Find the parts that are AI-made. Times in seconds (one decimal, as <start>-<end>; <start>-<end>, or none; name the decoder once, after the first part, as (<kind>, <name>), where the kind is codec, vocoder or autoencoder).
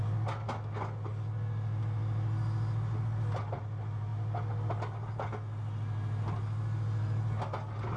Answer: none